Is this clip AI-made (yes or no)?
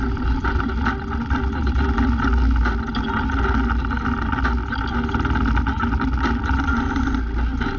no